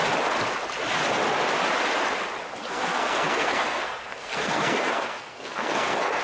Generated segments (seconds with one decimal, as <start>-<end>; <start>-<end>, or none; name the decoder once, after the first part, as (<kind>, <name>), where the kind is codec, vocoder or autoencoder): 2.6-6.2 (codec, SNAC)